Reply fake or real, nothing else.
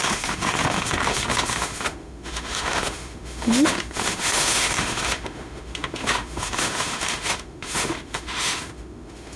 fake